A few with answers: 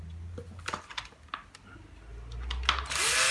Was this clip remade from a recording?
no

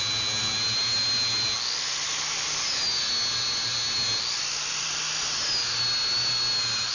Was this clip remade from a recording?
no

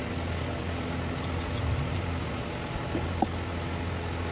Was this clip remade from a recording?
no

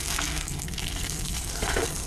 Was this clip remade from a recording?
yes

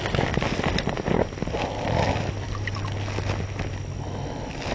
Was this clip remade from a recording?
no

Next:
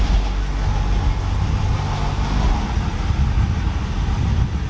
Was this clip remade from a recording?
no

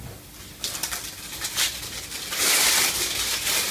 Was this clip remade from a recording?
no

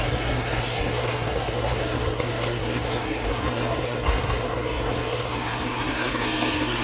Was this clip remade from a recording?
yes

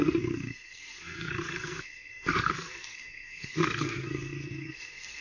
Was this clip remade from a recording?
yes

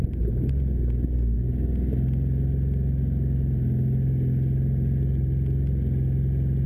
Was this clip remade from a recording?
no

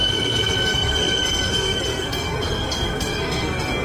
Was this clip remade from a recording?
yes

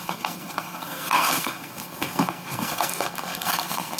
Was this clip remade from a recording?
yes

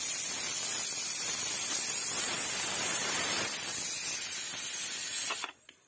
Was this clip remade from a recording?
no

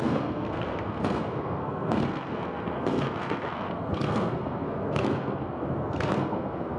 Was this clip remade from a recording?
yes